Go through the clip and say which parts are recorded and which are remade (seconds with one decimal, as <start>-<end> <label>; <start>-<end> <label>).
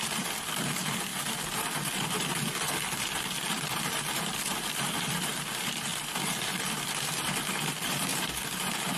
0.0-1.1 remade; 1.1-3.9 recorded; 3.9-8.1 remade; 8.1-9.0 recorded